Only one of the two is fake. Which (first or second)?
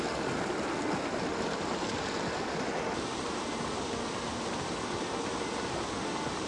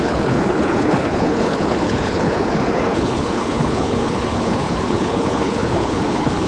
second